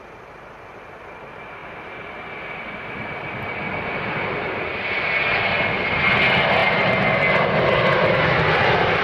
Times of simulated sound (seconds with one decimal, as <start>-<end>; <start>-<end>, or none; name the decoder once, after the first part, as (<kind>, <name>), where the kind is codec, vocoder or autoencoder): none